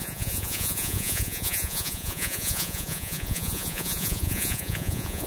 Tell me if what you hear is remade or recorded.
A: remade